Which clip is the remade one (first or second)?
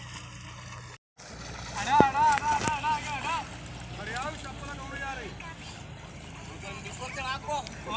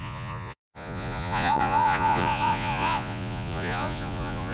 second